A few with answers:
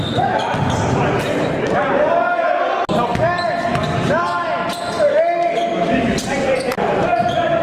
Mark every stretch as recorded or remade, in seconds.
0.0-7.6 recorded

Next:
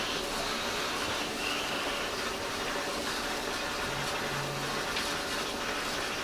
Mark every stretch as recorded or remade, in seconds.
0.0-1.3 recorded; 1.3-2.0 remade; 2.0-2.9 recorded; 2.9-3.5 remade; 3.5-6.2 recorded

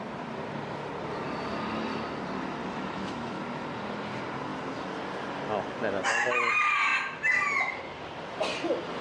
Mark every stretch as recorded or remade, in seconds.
0.0-2.6 recorded; 2.6-3.3 remade; 3.3-9.0 recorded

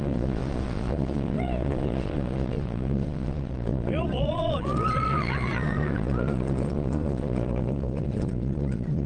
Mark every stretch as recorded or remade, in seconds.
0.0-9.1 remade